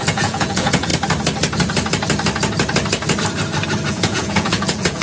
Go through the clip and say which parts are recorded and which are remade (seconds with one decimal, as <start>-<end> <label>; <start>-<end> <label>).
0.0-0.9 remade; 0.9-3.9 recorded; 3.9-5.0 remade